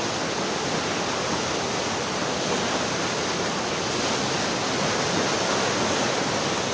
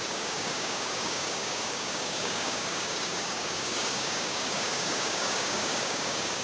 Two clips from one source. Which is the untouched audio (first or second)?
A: first